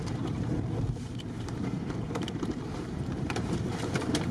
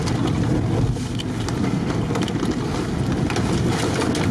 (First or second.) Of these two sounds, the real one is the second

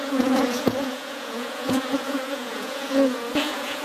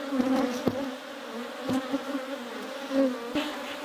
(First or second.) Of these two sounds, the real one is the second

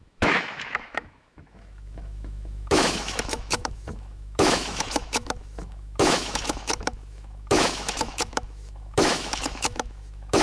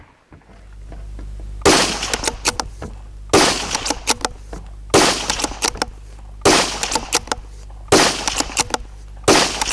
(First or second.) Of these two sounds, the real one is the second